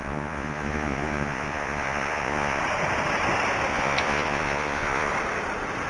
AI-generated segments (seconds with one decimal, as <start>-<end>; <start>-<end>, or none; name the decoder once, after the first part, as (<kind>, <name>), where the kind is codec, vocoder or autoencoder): 0.0-2.6 (vocoder, Vocos); 3.7-5.1